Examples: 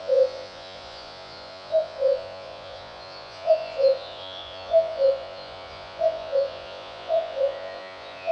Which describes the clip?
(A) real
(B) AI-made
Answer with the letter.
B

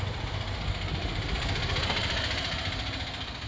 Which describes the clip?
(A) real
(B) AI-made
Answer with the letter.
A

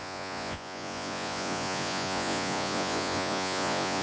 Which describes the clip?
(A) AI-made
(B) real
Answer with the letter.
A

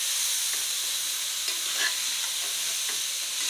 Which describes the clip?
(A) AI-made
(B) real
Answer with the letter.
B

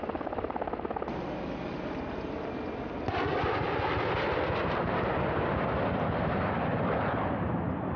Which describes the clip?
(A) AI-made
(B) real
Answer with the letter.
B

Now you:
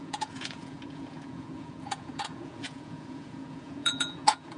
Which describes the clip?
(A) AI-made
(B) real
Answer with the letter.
A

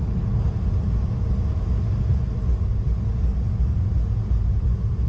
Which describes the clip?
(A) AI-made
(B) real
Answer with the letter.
B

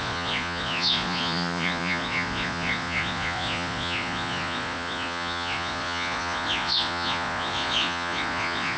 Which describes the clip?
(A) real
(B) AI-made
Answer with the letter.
B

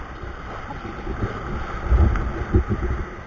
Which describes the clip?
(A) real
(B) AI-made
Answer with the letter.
A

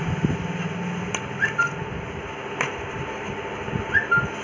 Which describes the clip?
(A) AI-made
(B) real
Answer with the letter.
B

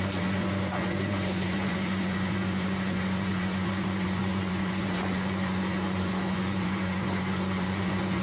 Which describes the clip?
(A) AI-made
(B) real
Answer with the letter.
A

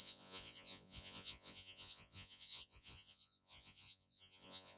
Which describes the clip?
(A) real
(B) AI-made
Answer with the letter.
B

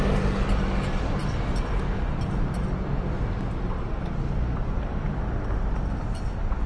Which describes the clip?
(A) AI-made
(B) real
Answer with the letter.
B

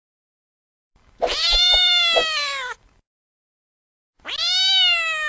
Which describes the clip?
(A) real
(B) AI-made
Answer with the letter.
A